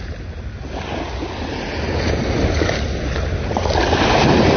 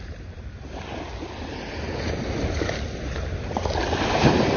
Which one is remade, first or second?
second